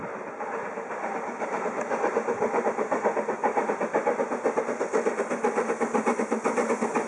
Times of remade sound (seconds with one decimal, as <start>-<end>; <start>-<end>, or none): none